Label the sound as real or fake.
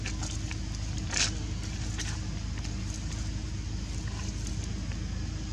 real